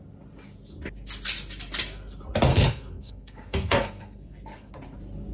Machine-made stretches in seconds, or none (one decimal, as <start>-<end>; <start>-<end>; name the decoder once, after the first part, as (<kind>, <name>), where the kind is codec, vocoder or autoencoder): 2.5-4.7 (codec, SNAC)

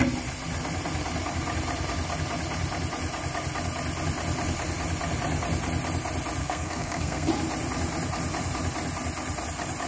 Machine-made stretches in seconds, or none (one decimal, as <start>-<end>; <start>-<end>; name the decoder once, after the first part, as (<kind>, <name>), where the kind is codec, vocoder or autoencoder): 6.4-7.3 (codec, SNAC)